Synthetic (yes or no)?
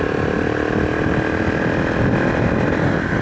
no